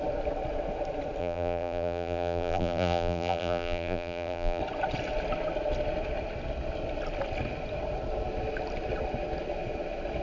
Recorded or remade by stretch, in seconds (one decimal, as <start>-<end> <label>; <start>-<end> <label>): 0.0-1.2 recorded; 1.2-4.6 remade; 4.6-10.2 recorded